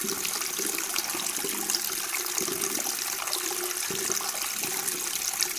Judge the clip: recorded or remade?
recorded